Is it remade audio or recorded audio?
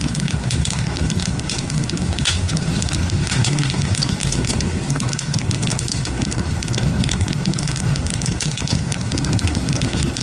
remade